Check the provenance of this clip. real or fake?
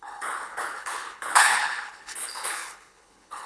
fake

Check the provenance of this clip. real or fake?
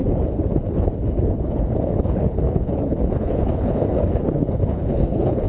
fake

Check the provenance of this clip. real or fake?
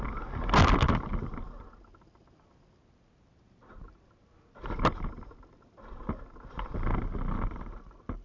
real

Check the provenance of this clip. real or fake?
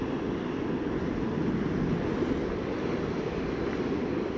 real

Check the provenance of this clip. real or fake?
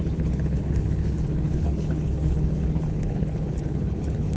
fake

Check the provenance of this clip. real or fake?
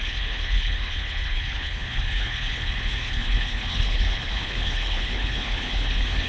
fake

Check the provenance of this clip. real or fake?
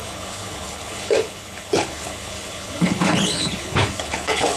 fake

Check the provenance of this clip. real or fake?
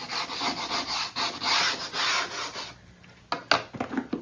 real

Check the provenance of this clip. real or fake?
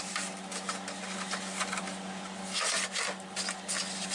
real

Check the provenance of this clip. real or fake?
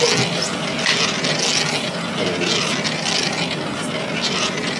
real